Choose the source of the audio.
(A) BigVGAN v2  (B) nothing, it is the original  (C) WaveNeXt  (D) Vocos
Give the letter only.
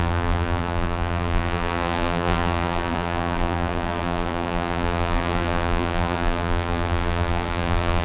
A